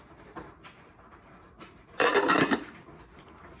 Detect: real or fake real